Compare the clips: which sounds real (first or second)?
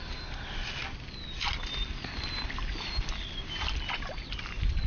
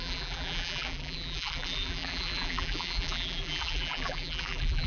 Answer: first